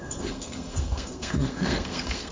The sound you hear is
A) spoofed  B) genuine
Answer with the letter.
A